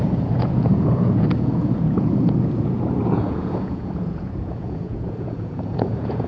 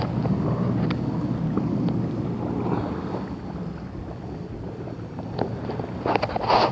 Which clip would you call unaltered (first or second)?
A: second